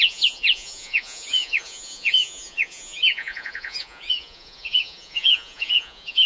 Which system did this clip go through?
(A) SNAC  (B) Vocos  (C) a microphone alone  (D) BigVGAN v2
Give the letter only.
B